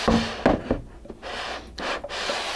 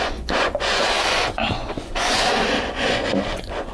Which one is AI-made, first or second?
second